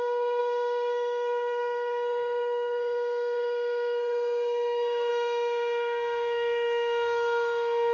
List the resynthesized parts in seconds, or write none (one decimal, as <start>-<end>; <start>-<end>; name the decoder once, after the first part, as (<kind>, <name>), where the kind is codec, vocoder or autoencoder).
0.0-7.9 (codec, SNAC)